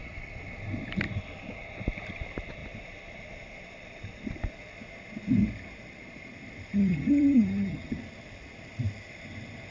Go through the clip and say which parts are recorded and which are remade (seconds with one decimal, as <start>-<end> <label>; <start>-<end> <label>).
0.0-6.7 recorded; 6.7-8.0 remade; 8.0-9.7 recorded